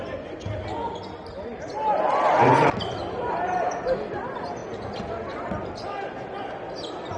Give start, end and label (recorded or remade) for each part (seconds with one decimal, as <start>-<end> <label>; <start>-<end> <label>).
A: 0.0-7.2 recorded